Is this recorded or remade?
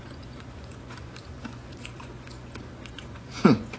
remade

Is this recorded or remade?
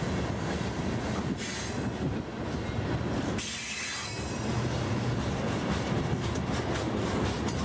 recorded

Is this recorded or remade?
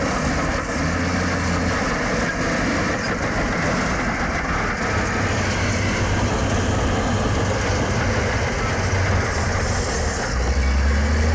recorded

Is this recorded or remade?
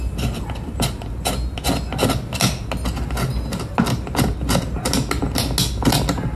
recorded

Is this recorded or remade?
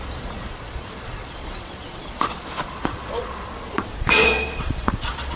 remade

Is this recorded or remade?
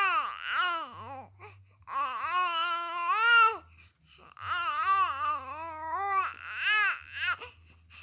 recorded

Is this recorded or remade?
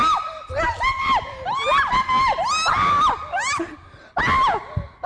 recorded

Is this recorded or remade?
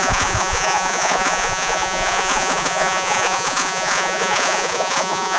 remade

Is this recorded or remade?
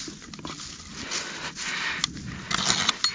recorded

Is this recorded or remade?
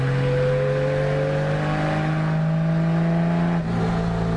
recorded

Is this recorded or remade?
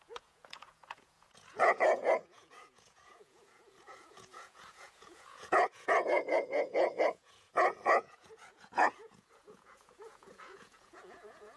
remade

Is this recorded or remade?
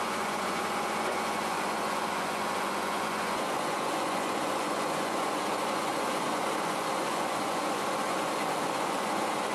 remade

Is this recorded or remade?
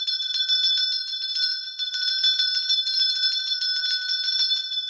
recorded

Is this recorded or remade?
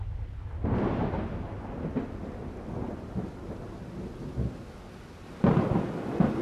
recorded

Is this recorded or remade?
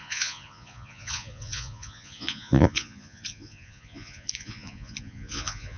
remade